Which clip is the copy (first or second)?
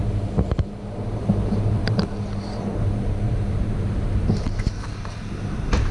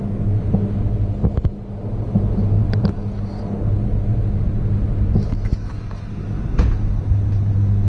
first